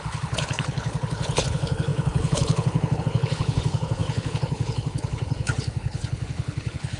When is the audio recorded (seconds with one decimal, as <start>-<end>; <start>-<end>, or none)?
none